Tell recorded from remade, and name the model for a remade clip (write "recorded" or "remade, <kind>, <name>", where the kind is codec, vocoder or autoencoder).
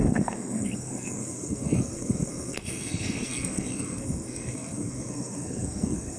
remade, codec, SNAC